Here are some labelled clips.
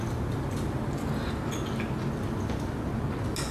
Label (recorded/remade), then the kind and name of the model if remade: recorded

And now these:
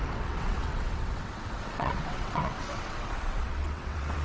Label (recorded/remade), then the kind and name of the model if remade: remade, vocoder, WaveNeXt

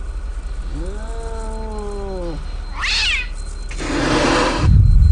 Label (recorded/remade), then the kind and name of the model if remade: recorded